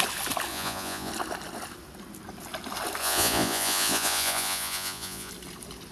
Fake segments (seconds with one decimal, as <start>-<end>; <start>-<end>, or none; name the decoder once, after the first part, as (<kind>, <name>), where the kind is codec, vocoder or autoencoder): 0.5-1.1 (vocoder, Vocos); 3.0-5.3